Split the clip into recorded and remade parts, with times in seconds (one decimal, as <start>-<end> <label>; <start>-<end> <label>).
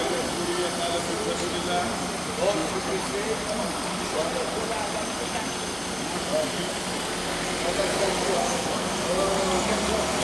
0.0-8.4 recorded; 8.4-8.9 remade; 8.9-10.2 recorded